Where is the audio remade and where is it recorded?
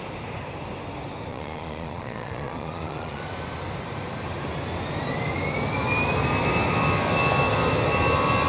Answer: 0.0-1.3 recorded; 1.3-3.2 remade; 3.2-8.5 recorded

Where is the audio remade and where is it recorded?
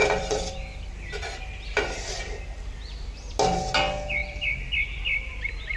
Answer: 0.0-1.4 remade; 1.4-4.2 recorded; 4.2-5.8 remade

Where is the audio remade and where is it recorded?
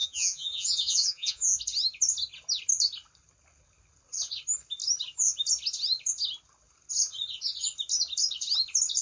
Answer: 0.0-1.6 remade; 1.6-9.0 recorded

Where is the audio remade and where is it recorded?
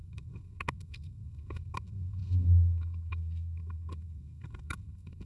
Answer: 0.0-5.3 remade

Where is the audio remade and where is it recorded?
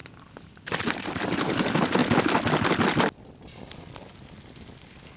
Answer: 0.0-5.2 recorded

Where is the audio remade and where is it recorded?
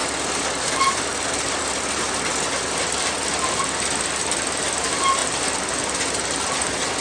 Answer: 0.0-7.0 recorded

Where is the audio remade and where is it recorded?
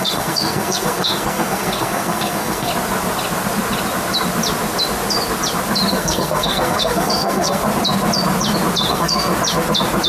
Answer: 0.0-2.7 remade; 2.7-5.9 recorded; 5.9-7.6 remade; 7.6-8.9 recorded; 8.9-9.3 remade; 9.3-10.1 recorded